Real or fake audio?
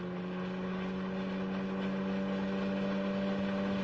real